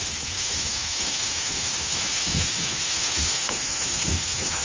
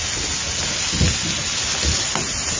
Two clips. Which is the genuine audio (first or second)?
second